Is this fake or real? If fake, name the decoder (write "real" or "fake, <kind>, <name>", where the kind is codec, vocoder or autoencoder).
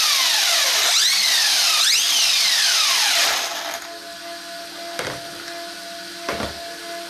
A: real